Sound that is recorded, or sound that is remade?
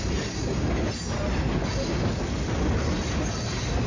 recorded